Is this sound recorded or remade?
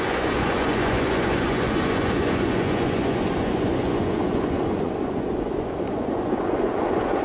remade